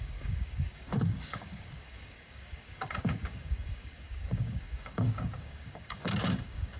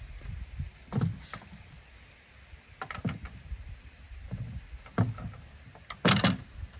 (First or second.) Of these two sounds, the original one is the second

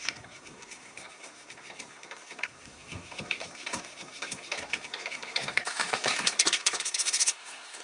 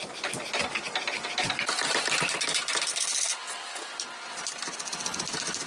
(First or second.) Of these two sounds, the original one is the second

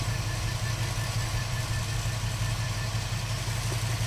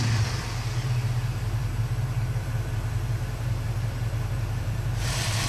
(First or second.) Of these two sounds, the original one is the first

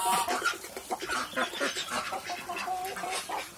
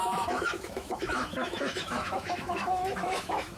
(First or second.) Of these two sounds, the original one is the first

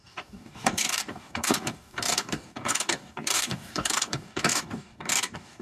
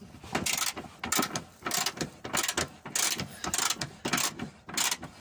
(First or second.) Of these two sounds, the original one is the second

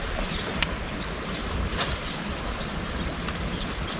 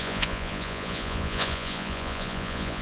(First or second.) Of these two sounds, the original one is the first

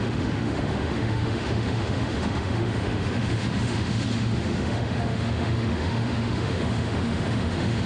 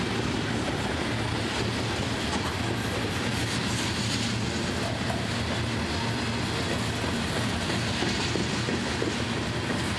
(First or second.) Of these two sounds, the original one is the second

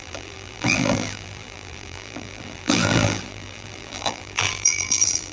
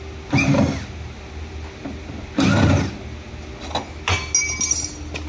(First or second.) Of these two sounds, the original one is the second